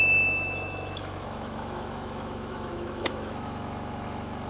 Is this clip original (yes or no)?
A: no